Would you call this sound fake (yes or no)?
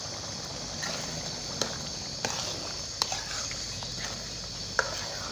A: no